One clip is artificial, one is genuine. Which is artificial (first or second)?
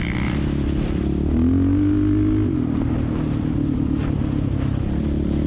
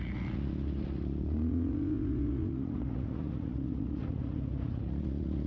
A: second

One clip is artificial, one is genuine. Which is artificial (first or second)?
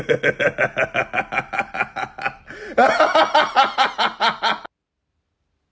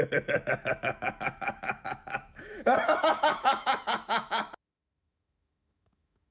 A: second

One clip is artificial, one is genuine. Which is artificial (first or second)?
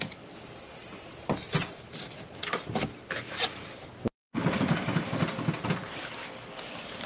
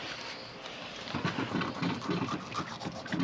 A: first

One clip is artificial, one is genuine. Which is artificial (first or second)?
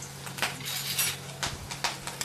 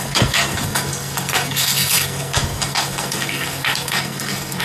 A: second